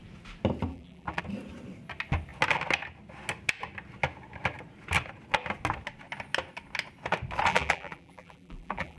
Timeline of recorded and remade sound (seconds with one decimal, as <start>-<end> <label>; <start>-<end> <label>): 0.0-0.7 recorded; 0.7-1.2 remade; 1.2-7.5 recorded; 7.5-9.0 remade